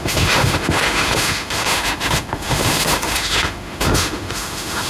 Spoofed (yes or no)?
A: yes